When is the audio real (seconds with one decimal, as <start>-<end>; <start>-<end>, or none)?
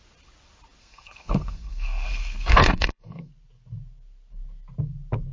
0.0-0.8; 3.3-5.3